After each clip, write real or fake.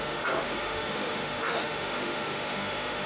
fake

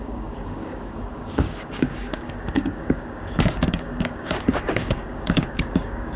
fake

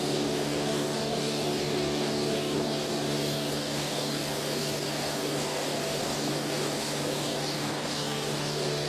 fake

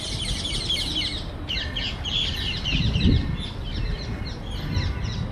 real